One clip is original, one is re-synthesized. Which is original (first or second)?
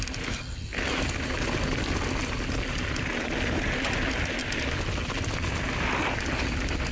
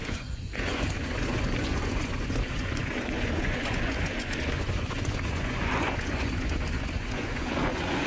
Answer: first